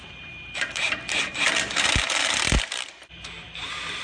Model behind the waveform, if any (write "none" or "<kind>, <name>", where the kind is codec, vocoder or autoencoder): none